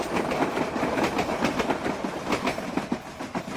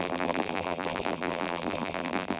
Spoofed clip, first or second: second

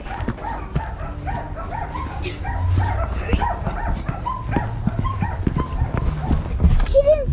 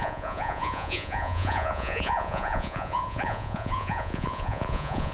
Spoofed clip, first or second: second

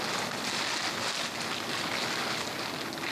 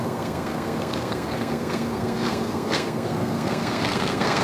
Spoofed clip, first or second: second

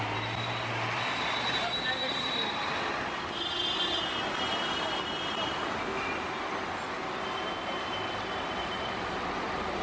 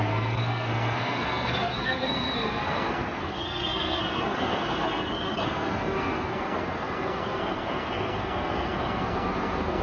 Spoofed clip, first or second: second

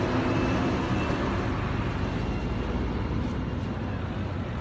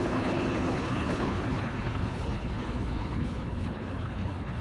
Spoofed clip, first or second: second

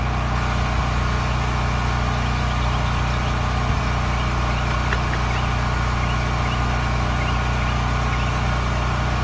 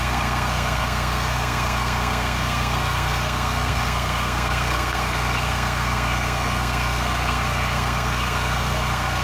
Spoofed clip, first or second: second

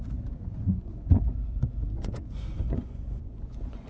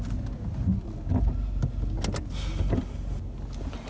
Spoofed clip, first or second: first